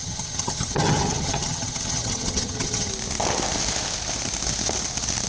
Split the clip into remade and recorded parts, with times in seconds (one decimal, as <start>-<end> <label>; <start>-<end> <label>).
0.0-2.9 remade; 2.9-5.3 recorded